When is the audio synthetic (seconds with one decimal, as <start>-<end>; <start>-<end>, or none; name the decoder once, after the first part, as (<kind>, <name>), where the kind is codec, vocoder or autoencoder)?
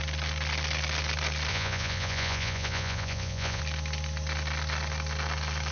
1.5-3.6 (vocoder, Vocos)